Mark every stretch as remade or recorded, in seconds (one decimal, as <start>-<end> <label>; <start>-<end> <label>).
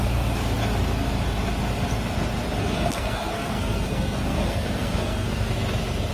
0.0-2.6 recorded; 2.6-5.5 remade; 5.5-6.1 recorded